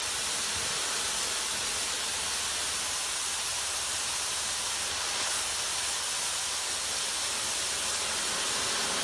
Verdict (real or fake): real